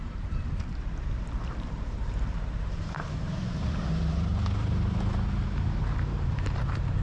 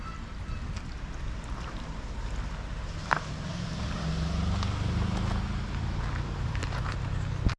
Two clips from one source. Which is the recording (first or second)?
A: second